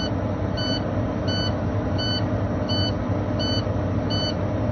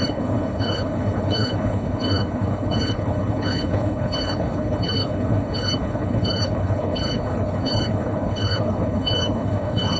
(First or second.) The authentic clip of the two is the first